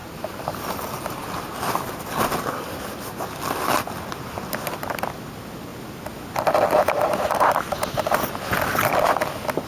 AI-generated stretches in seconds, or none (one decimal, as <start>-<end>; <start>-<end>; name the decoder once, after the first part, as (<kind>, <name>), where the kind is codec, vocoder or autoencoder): none